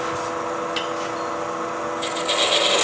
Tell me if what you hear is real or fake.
real